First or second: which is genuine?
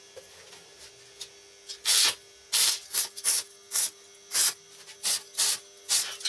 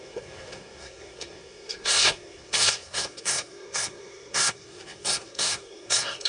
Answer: first